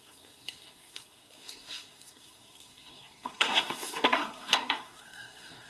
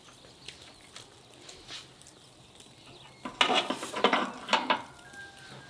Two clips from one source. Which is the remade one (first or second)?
first